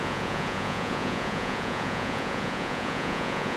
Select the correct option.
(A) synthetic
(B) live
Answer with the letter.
A